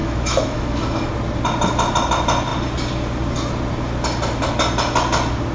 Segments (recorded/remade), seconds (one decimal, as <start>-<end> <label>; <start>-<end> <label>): 0.0-1.1 remade; 1.1-5.5 recorded

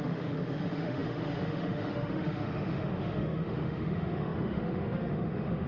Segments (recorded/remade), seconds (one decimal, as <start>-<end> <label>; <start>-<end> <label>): 0.0-5.7 remade

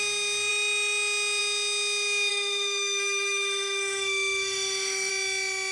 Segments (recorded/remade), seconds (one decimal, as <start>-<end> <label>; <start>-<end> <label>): 0.0-2.3 recorded; 2.3-5.1 remade; 5.1-5.7 recorded

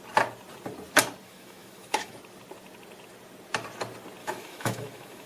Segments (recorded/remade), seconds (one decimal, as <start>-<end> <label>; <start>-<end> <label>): 0.0-1.2 recorded; 1.2-2.1 remade; 2.1-4.2 recorded; 4.2-5.3 remade

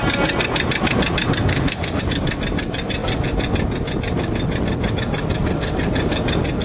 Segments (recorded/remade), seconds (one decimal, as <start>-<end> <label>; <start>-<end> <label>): 0.0-1.5 recorded; 1.5-2.0 remade; 2.0-6.6 recorded

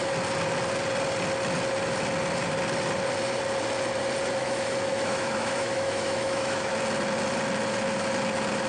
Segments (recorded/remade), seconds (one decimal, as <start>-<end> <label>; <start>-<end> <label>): 0.0-4.4 recorded; 4.4-6.7 remade; 6.7-8.7 recorded

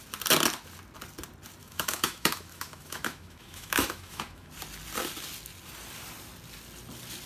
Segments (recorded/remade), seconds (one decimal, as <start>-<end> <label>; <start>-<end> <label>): 0.0-1.6 recorded; 1.6-4.5 remade; 4.5-7.3 recorded

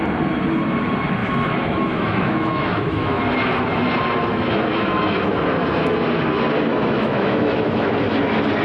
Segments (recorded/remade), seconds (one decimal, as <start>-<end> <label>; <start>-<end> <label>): 0.0-1.2 recorded; 1.2-3.2 remade; 3.2-4.3 recorded; 4.3-5.2 remade; 5.2-6.7 recorded; 6.7-7.9 remade; 7.9-8.6 recorded